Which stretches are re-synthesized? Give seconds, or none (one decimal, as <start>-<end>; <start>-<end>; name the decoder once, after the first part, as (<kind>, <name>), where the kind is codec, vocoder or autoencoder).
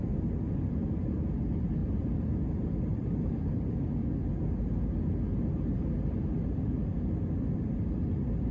1.8-3.2 (vocoder, BigVGAN v2)